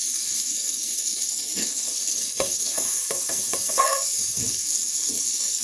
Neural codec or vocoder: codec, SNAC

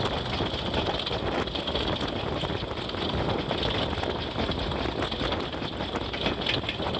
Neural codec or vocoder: none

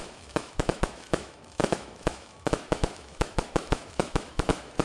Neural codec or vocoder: autoencoder, DAC-VAE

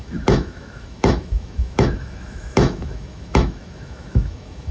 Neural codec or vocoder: autoencoder, DAC-VAE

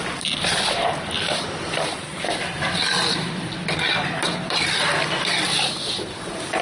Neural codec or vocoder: vocoder, BigVGAN v2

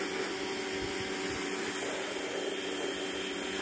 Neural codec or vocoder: none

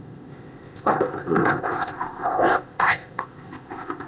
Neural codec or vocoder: codec, ZipCodec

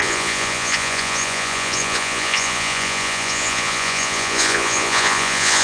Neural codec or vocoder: vocoder, Vocos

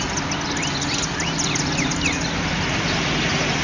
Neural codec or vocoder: none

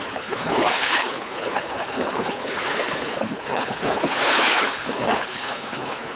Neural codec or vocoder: codec, HILCodec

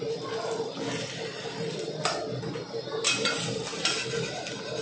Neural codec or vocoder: none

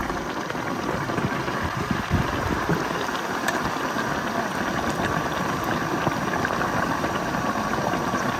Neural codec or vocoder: none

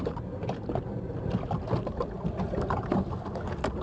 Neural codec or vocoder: none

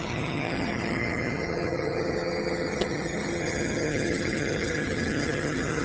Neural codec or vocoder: vocoder, HiFi-GAN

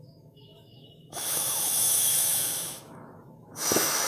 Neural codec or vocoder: autoencoder, DAC-VAE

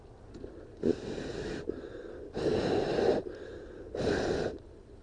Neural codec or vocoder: none